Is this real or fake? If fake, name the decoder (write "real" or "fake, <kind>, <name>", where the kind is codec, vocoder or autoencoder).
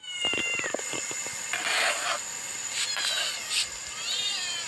real